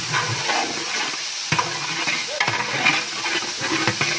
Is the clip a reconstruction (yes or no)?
no